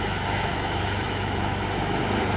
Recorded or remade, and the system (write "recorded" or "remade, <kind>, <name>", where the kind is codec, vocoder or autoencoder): remade, autoencoder, DAC-VAE